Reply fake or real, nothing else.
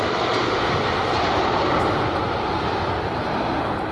real